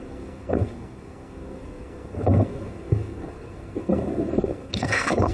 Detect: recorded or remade remade